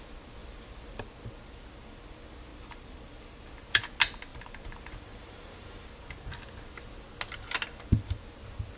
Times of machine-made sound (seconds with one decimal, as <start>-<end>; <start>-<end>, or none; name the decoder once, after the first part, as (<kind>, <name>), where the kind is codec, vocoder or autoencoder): 2.5-3.8 (vocoder, BigVGAN v2); 4.3-6.2